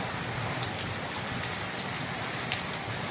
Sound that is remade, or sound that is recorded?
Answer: recorded